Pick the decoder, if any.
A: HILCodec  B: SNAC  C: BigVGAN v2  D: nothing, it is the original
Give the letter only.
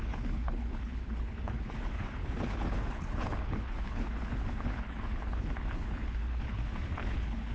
A